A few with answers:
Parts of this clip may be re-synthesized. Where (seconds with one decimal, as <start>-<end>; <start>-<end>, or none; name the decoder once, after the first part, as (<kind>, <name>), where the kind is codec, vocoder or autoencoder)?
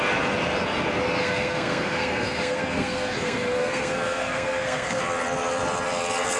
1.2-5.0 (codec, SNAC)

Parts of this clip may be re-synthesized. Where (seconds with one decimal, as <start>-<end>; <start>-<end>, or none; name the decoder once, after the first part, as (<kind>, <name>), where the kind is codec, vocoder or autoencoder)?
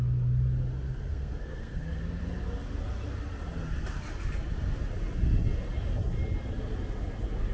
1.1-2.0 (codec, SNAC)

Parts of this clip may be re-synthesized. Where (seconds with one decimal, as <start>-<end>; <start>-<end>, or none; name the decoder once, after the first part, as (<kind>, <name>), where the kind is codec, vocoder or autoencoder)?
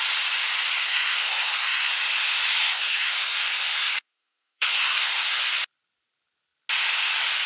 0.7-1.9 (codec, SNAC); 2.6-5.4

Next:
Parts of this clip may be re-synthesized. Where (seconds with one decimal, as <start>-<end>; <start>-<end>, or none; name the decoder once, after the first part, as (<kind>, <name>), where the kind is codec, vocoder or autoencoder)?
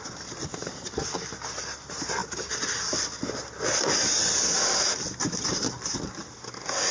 none